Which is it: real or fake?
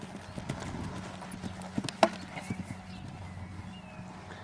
real